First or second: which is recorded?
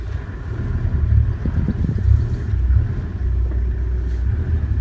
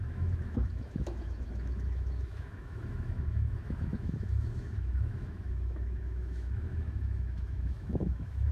first